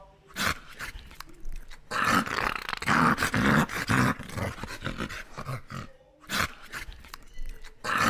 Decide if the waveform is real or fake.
real